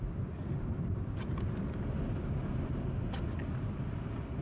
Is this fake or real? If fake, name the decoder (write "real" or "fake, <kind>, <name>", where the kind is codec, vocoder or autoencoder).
real